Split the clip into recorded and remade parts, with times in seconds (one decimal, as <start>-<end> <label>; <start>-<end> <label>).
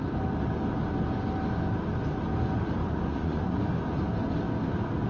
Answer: 0.0-2.8 recorded; 2.8-3.7 remade; 3.7-5.1 recorded